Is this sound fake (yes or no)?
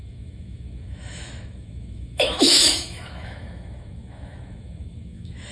yes